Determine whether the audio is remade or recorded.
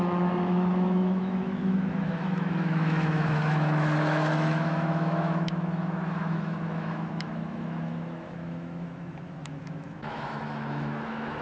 remade